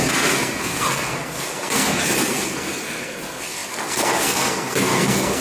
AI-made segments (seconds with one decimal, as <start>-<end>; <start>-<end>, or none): 0.0-5.4